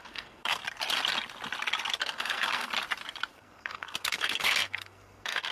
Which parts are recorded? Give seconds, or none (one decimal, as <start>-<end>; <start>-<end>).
0.6-2.0; 2.7-3.3